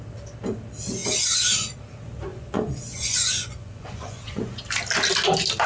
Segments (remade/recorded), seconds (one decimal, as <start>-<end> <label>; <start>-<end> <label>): 0.0-2.3 recorded; 2.3-4.6 remade; 4.6-5.7 recorded